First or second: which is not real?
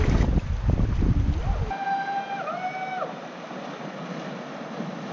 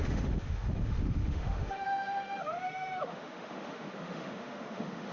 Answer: second